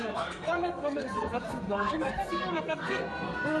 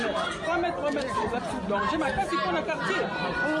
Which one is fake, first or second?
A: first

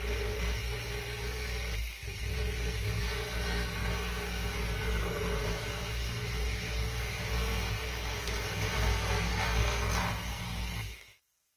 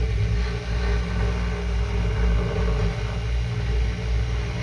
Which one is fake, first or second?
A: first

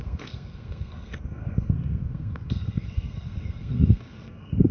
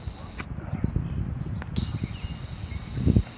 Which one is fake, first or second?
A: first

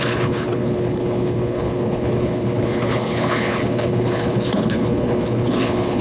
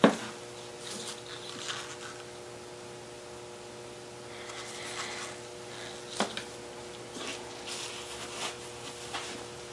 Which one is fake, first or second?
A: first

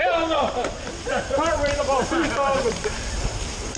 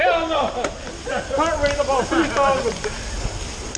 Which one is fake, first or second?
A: first